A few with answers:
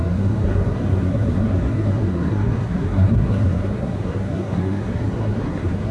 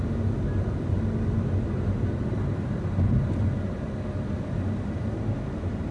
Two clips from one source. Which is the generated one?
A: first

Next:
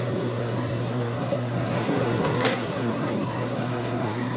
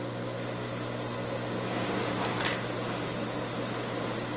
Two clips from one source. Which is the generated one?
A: first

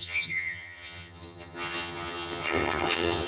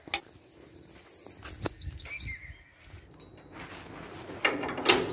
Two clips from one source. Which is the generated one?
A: first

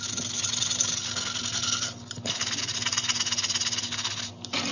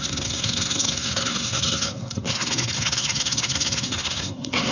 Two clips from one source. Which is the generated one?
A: second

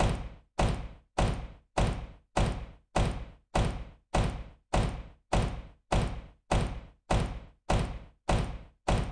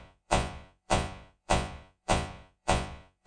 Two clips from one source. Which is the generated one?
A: second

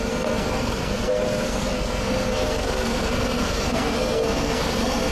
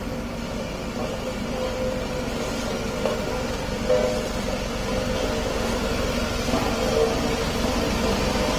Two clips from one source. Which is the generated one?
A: first